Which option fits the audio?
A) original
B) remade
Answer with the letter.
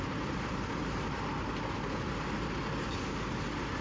A